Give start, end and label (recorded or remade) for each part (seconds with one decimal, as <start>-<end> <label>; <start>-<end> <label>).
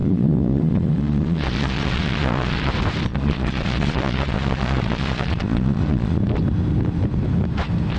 0.0-2.7 remade; 2.7-3.1 recorded; 3.1-6.2 remade; 6.2-8.0 recorded